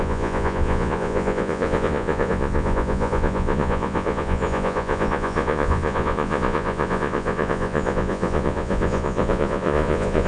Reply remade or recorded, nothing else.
remade